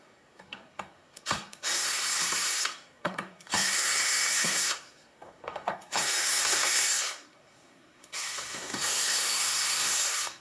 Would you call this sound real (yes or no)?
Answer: no